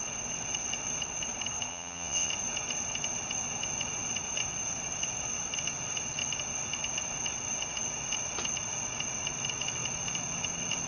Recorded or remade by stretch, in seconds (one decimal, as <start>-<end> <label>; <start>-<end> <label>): 0.0-1.7 recorded; 1.7-2.3 remade; 2.3-10.9 recorded